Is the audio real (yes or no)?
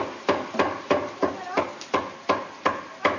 yes